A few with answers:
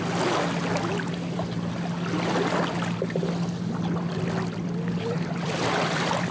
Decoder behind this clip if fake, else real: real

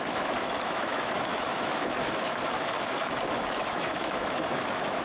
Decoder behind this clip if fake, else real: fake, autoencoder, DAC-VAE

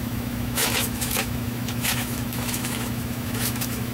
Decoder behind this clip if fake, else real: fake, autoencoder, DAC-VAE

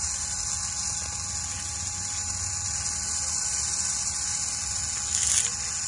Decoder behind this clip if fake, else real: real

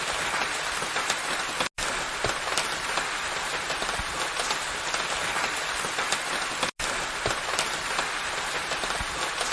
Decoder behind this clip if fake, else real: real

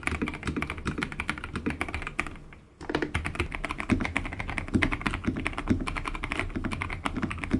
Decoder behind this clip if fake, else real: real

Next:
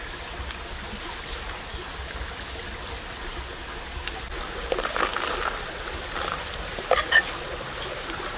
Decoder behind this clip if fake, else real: real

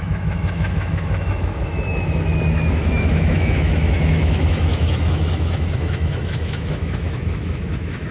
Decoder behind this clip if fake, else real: fake, autoencoder, DAC-VAE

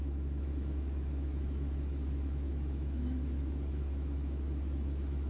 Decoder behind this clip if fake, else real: fake, autoencoder, DAC-VAE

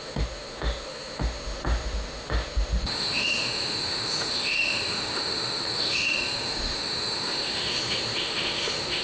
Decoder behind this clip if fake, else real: fake, autoencoder, DAC-VAE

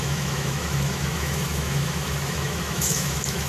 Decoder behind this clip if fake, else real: fake, autoencoder, DAC-VAE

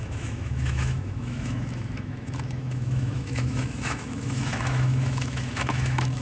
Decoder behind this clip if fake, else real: fake, autoencoder, DAC-VAE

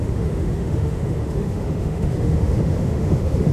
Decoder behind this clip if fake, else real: fake, autoencoder, DAC-VAE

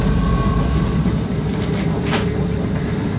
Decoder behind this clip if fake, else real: real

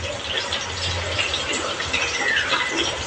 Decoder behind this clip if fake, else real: real